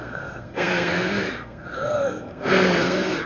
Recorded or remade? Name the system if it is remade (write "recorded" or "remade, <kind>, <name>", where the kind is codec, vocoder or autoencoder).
remade, codec, SNAC